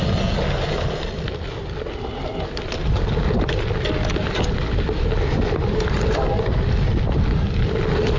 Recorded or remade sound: recorded